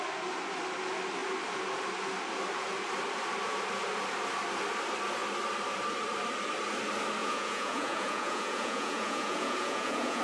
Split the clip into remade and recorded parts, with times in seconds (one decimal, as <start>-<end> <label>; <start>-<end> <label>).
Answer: 0.0-7.2 recorded; 7.2-10.2 remade